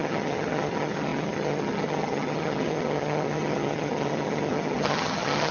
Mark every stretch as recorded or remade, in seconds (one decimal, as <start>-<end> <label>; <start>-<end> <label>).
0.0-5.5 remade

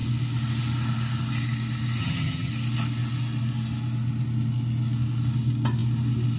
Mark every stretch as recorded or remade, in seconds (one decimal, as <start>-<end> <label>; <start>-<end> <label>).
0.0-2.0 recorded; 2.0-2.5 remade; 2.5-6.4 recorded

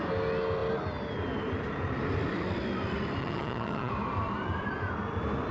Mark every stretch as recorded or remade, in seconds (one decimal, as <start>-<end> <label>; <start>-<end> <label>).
0.0-3.2 recorded; 3.2-3.9 remade; 3.9-5.5 recorded